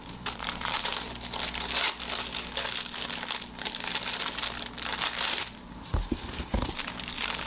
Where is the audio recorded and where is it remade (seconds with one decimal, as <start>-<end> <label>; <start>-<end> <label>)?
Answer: 0.0-0.9 remade; 0.9-5.4 recorded; 5.4-7.5 remade